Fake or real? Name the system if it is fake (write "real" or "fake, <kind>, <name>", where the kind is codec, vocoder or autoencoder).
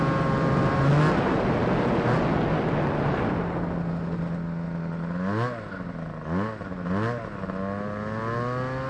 real